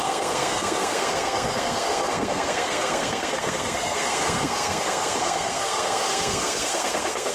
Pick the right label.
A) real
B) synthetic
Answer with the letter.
B